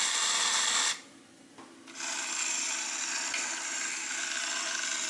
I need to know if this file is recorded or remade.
recorded